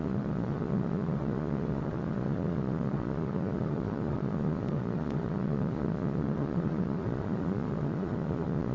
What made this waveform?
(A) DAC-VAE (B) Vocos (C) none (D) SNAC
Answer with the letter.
B